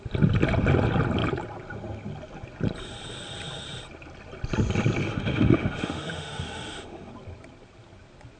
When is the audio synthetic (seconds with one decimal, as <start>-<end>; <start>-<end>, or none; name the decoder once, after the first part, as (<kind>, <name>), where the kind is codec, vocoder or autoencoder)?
5.0-7.1 (autoencoder, DAC-VAE)